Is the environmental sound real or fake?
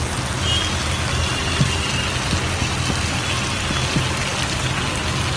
real